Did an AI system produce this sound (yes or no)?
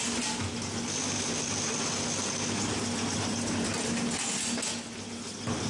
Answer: no